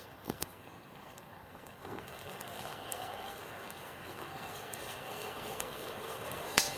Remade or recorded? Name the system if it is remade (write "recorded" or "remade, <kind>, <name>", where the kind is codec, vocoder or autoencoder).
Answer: remade, codec, SNAC